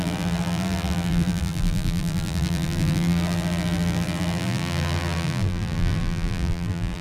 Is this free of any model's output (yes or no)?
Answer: no